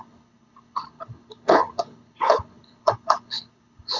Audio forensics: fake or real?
fake